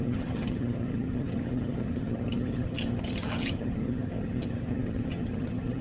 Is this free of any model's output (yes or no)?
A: no